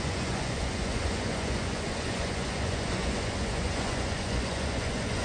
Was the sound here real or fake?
fake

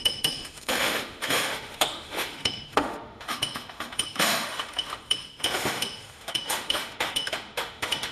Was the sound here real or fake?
fake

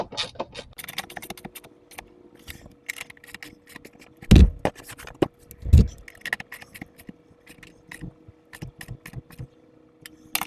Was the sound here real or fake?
real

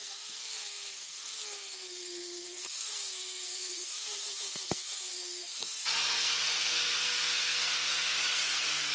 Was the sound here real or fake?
fake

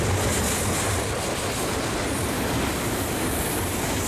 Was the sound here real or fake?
fake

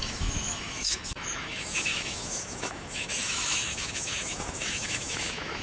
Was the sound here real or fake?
fake